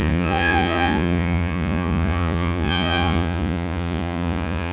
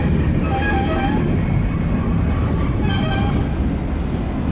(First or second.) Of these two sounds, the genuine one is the second